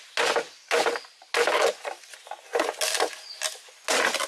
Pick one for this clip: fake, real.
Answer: real